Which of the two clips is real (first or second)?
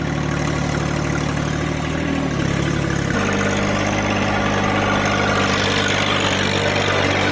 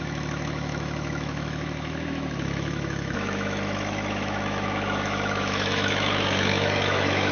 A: first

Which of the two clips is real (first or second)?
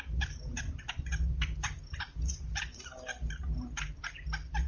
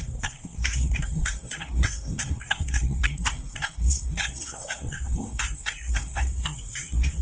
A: first